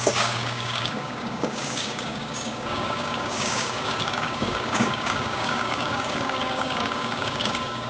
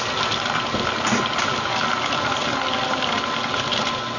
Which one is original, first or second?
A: second